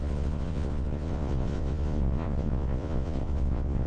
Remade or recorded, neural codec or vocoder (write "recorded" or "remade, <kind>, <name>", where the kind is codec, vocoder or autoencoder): remade, vocoder, Vocos